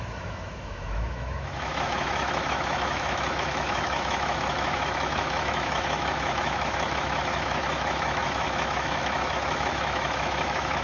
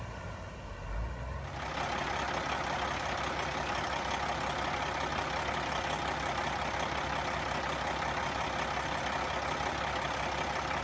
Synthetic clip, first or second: first